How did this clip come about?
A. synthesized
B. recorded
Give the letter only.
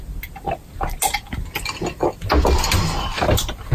B